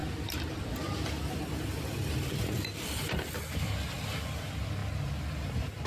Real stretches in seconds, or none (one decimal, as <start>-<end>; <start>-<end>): 3.3-5.9